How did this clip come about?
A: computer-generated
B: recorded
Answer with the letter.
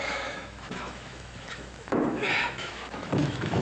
A